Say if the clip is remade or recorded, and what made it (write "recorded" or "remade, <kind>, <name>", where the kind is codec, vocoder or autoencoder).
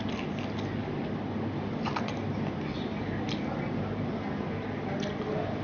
recorded